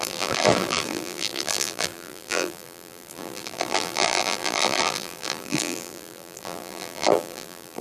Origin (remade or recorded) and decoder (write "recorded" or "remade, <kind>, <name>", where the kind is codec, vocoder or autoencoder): remade, vocoder, BigVGAN v2